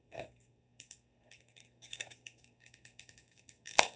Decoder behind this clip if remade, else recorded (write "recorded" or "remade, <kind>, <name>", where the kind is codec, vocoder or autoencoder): remade, codec, SNAC